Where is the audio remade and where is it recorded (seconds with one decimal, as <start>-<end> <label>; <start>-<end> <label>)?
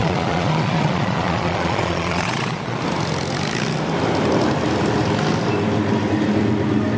0.0-2.8 remade; 2.8-7.0 recorded